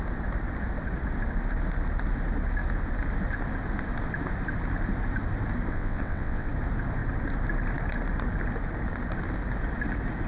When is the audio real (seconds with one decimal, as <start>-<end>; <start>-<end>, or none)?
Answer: 0.0-5.7; 6.5-10.3